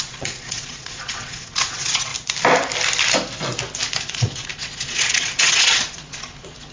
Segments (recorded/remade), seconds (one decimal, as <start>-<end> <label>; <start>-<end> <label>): 0.0-2.1 remade; 2.1-4.0 recorded; 4.0-6.7 remade